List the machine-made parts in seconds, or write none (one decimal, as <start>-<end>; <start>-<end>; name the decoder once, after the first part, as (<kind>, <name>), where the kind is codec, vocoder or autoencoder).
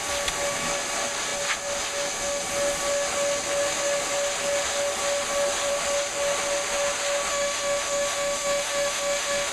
7.3-9.5 (autoencoder, DAC-VAE)